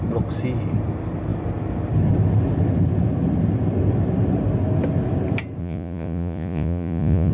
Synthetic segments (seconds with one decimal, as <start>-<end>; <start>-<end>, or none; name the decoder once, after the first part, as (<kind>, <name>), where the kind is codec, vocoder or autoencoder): 5.6-7.3 (vocoder, Vocos)